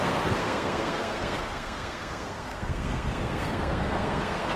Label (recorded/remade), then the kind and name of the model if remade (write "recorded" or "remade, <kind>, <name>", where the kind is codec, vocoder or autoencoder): remade, codec, SNAC